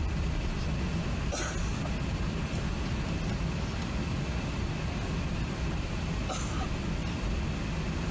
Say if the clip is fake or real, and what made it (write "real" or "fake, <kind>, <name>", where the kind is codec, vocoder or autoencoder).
real